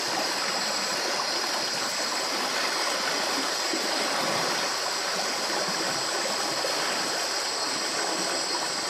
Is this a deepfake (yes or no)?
no